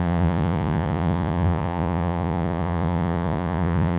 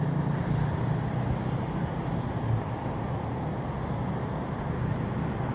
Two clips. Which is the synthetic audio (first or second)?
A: first